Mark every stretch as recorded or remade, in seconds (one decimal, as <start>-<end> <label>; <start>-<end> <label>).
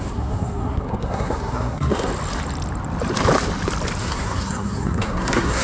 0.0-2.1 remade; 2.1-4.0 recorded; 4.0-5.6 remade